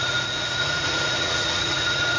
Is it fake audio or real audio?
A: fake